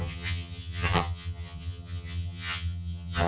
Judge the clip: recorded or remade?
remade